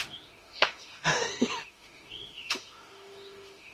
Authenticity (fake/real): fake